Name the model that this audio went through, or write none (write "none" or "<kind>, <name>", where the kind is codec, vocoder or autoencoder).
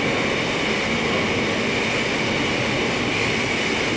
none